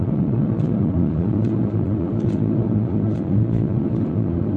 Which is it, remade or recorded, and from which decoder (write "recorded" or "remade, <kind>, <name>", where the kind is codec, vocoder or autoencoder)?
remade, vocoder, Vocos